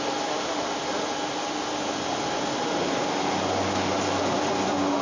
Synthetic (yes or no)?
no